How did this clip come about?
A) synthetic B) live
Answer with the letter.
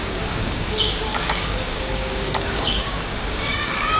A